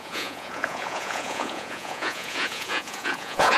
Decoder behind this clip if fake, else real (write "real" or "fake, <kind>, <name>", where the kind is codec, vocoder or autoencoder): fake, vocoder, Vocos